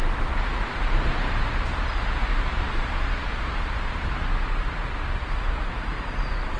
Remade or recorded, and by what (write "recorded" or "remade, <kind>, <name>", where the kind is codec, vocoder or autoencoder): recorded